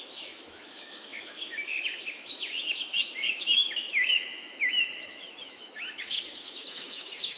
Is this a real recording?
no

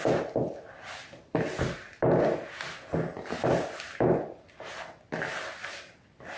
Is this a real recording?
yes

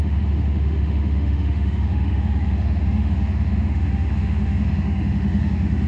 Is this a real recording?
no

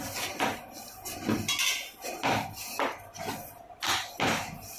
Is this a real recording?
yes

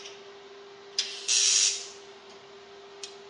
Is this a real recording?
yes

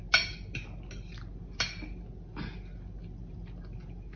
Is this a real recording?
yes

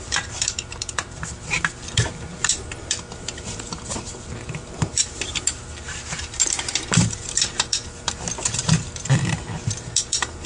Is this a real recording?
no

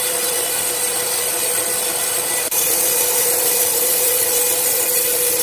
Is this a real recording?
yes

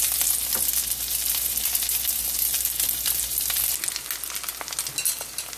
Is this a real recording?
yes